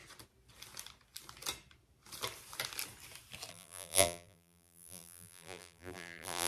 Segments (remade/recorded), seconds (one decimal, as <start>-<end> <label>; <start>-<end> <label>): 0.0-3.5 recorded; 3.5-6.5 remade